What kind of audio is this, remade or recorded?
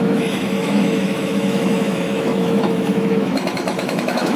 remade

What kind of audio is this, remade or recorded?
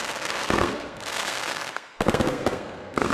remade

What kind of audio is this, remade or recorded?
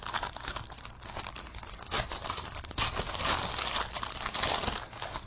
recorded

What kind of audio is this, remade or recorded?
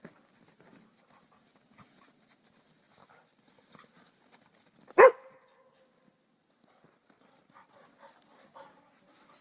recorded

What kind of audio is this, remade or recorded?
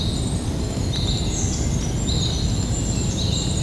recorded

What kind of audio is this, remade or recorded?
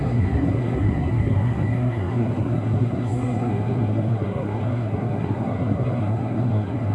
remade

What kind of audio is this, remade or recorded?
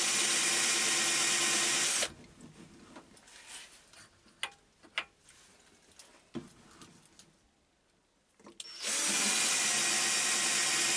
recorded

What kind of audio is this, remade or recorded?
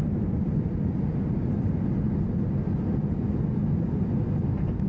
recorded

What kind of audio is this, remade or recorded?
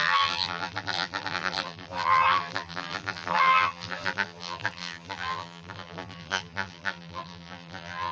remade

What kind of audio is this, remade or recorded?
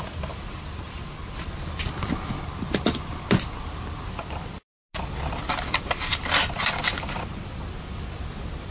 recorded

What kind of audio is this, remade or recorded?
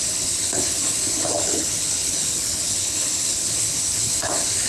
remade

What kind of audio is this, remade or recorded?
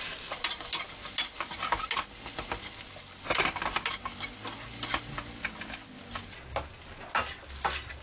recorded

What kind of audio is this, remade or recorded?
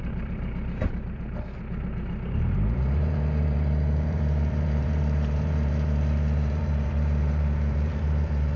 remade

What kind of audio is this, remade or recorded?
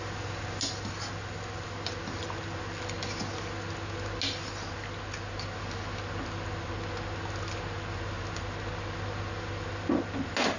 recorded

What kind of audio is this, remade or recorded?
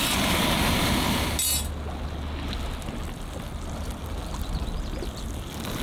recorded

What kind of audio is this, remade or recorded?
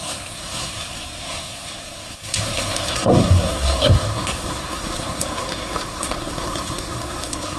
remade